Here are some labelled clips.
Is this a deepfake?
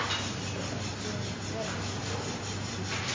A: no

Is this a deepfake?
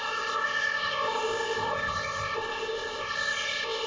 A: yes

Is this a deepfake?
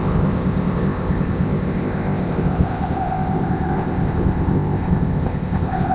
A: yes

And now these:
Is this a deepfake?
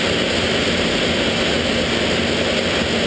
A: no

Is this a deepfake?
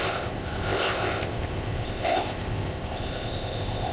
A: yes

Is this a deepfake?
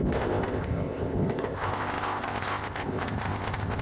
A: yes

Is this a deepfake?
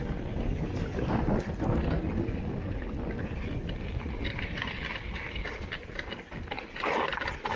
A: no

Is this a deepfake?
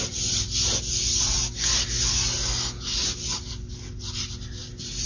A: no